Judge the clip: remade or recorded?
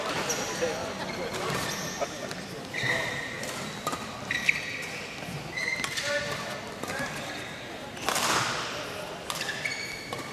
recorded